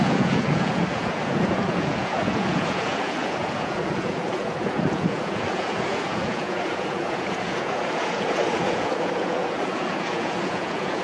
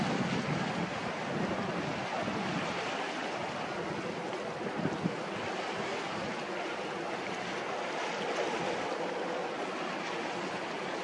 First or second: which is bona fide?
second